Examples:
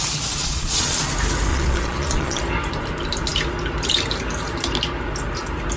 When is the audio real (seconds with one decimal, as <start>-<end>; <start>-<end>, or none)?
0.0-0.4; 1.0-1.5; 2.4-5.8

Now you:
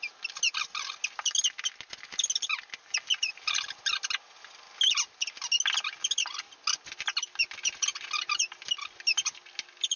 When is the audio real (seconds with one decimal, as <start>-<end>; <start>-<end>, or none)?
0.0-10.0

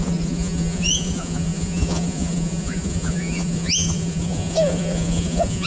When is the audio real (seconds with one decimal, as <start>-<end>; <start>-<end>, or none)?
none

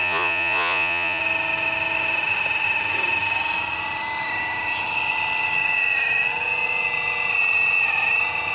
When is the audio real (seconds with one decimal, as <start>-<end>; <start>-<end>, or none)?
1.2-8.5

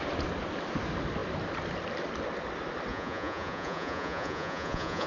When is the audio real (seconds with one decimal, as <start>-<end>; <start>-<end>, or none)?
0.0-2.9

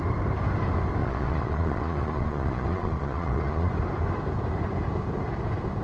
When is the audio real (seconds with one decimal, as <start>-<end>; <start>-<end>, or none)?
0.0-1.0; 3.7-5.8

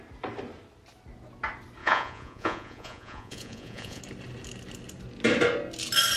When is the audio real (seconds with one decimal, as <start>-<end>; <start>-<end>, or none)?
0.0-1.8; 4.0-6.2